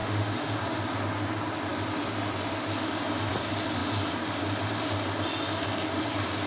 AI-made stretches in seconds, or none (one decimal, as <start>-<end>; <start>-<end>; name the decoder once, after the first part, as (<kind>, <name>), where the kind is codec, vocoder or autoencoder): 0.0-0.5 (autoencoder, DAC-VAE)